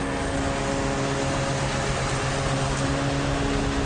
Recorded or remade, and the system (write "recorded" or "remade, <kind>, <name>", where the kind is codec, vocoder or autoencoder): recorded